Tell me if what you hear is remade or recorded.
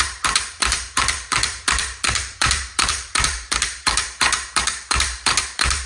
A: remade